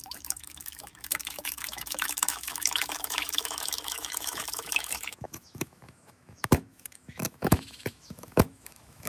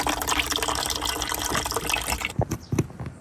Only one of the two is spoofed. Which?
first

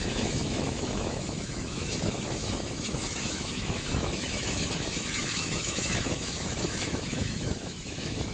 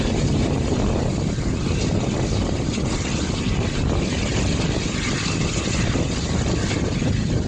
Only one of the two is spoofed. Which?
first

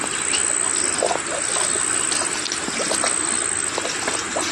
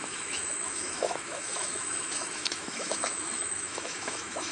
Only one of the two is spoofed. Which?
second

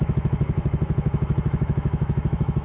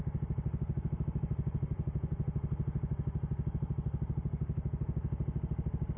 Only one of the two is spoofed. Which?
first